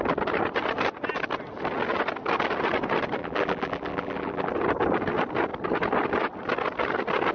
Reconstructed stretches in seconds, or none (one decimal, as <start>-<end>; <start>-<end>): 3.2-4.5